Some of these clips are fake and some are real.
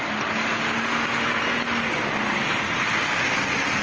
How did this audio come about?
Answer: real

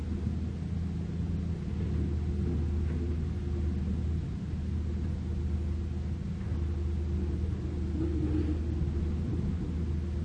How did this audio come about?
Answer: real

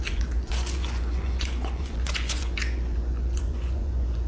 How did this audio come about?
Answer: fake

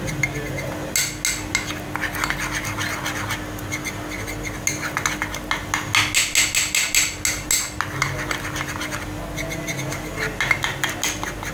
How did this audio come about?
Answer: real